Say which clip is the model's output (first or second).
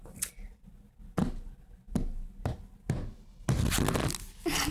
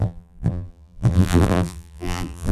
second